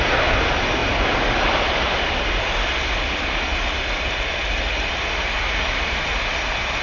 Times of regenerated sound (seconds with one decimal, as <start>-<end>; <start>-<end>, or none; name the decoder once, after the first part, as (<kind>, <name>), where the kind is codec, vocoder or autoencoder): none